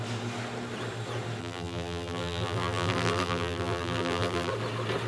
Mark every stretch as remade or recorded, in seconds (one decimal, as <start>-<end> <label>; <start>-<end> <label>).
0.0-1.4 recorded; 1.4-4.5 remade; 4.5-5.1 recorded